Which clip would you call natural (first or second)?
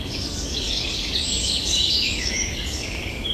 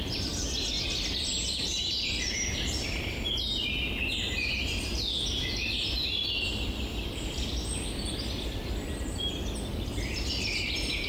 second